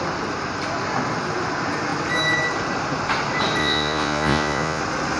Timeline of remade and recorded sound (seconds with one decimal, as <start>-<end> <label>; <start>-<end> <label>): 0.0-3.6 recorded; 3.6-4.8 remade; 4.8-5.2 recorded